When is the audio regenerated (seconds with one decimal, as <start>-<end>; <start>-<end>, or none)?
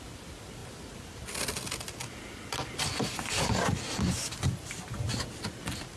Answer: none